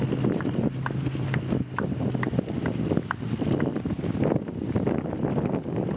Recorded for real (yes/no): yes